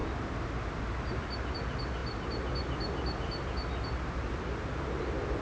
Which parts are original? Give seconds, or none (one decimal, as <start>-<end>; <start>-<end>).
0.0-5.4

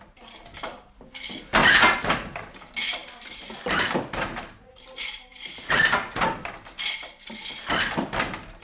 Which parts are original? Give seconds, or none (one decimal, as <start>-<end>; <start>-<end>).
0.0-1.6; 2.5-3.0; 6.3-8.6